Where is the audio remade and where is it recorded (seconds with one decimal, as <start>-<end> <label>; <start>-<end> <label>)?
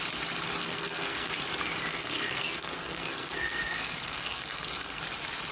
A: 0.0-0.6 recorded; 0.6-1.3 remade; 1.3-1.9 recorded; 1.9-5.0 remade; 5.0-5.5 recorded